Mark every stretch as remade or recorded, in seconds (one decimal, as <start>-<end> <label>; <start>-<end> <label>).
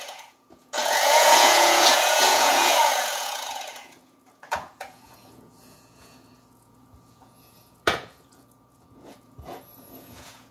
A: 0.0-10.5 remade